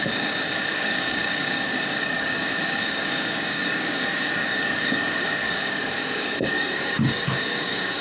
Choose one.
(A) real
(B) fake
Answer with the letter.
B